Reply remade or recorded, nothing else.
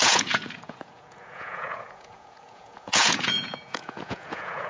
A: remade